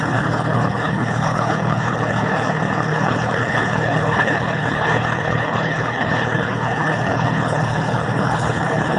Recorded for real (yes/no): no